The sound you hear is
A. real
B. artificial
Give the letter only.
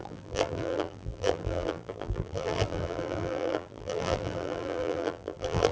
B